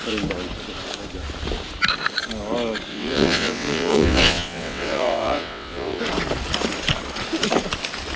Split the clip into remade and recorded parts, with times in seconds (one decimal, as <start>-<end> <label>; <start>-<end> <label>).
0.0-2.9 recorded; 2.9-6.0 remade; 6.0-8.2 recorded